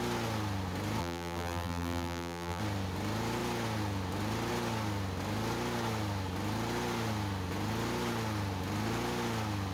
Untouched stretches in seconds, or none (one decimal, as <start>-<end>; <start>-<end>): 0.0-1.0; 2.6-9.7